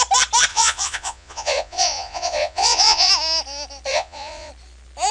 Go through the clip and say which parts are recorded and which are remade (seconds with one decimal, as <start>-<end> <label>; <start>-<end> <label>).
0.0-0.5 recorded; 0.5-3.1 remade; 3.1-3.9 recorded; 3.9-4.5 remade; 4.5-5.1 recorded